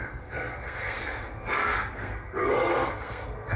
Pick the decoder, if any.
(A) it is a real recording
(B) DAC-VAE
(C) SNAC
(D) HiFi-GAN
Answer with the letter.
C